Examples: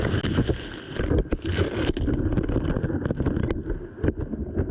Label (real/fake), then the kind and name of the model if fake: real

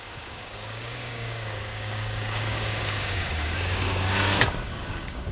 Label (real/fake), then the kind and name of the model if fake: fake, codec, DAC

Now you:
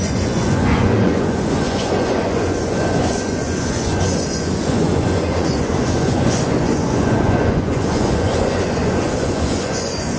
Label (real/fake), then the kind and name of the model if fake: fake, vocoder, Vocos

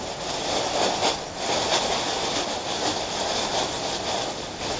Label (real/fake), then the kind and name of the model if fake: real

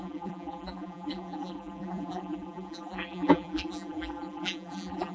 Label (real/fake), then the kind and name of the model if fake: fake, vocoder, BigVGAN v2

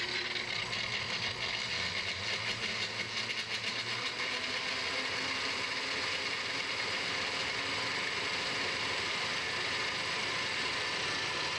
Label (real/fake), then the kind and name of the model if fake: real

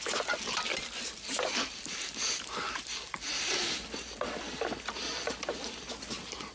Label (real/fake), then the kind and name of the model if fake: real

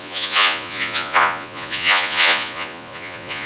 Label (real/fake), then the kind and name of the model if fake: fake, vocoder, Vocos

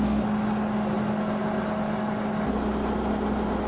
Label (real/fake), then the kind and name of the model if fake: real